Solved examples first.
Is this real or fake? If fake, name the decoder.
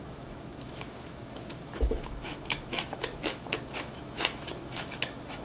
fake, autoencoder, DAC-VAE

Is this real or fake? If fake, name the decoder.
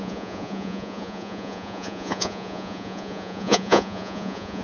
fake, vocoder, Vocos